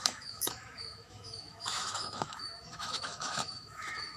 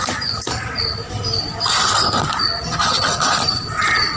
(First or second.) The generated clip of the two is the first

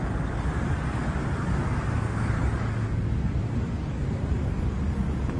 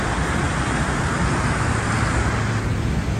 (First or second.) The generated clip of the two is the first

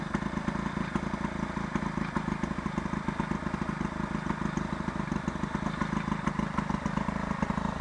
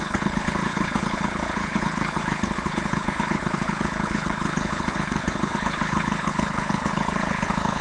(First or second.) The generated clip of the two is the second